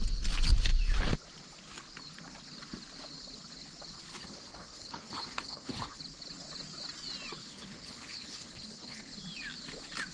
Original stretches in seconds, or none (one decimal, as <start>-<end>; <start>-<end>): 0.0-4.1; 6.0-7.4; 9.1-10.1